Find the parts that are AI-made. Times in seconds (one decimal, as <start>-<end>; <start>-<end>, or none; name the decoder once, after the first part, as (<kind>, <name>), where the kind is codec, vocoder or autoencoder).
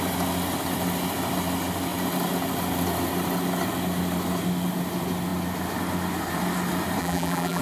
7.0-7.6 (vocoder, BigVGAN v2)